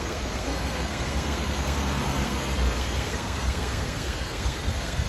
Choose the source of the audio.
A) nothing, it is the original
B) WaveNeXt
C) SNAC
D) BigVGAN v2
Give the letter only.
C